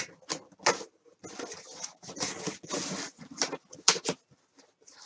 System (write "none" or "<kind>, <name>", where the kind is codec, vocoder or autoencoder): none